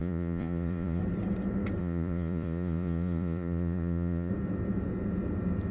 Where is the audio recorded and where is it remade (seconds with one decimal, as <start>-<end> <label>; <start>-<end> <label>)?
0.0-1.0 remade; 1.0-1.8 recorded; 1.8-4.3 remade; 4.3-5.7 recorded